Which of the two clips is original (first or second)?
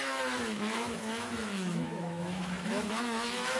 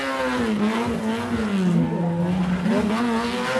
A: second